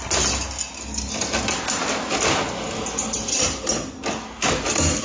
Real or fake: real